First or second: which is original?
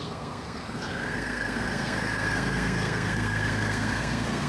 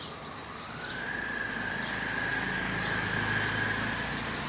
second